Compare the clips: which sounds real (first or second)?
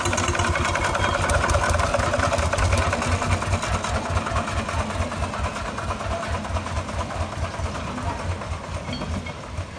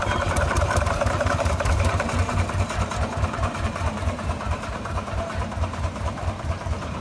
first